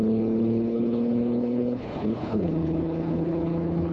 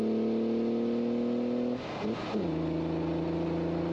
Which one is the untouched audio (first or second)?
second